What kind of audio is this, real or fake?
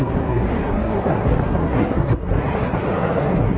fake